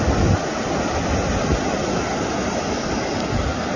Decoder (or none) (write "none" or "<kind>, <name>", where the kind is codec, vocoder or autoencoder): none